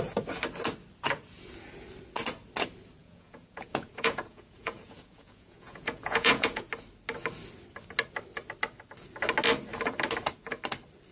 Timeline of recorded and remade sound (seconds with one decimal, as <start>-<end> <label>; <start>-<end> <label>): 0.0-3.0 recorded; 3.0-6.7 remade; 6.7-11.1 recorded